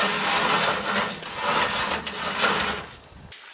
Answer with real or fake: real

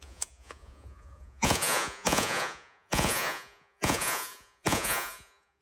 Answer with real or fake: fake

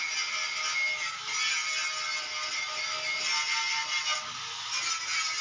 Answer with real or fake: real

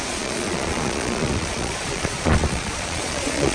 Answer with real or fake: fake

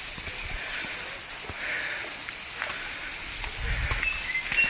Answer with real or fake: real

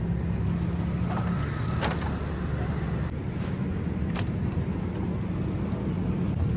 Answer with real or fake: real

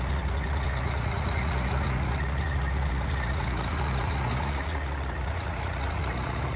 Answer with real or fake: fake